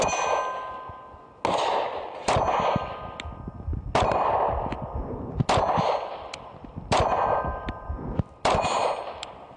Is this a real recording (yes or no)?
yes